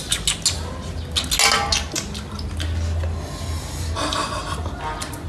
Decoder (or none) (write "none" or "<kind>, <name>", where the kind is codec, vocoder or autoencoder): none